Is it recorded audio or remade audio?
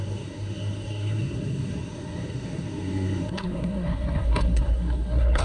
remade